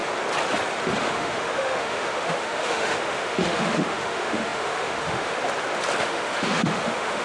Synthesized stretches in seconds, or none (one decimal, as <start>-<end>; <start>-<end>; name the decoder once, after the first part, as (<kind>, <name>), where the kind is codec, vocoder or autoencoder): 1.0-5.4 (autoencoder, DAC-VAE); 6.0-7.2